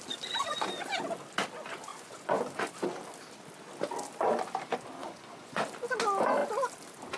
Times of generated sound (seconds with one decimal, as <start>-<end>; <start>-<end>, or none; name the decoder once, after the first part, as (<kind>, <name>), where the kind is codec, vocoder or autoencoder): 1.9-2.7 (vocoder, Vocos); 5.0-5.7